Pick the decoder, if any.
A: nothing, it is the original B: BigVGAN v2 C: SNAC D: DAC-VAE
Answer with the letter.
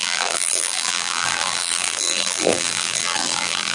B